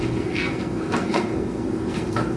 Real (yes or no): no